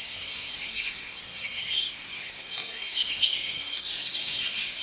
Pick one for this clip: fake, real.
fake